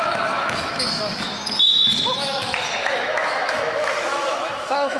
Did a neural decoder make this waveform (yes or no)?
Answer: yes